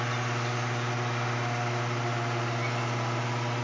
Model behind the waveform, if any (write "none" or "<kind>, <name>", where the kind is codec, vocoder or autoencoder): none